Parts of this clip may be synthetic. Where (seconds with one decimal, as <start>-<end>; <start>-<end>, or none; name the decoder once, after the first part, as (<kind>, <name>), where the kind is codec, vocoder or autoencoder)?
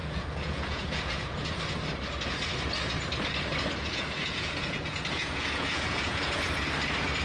0.0-1.6 (vocoder, Vocos); 3.8-6.6